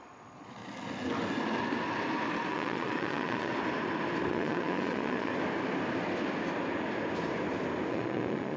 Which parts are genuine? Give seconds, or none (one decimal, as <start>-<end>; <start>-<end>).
0.6-2.5; 3.5-4.3; 5.3-7.9